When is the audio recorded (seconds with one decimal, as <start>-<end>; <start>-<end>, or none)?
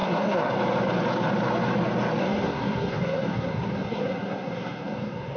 0.5-2.2